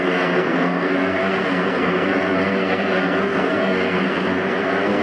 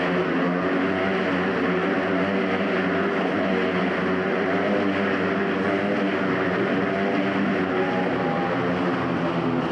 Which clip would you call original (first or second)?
second